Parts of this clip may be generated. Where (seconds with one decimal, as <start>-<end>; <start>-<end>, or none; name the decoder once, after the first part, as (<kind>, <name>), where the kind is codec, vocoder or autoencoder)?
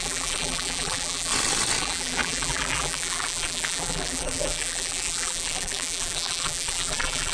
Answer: 0.0-1.3 (vocoder, BigVGAN v2); 1.8-7.3